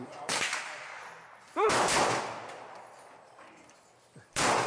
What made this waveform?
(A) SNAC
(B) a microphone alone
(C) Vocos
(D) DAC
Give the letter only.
B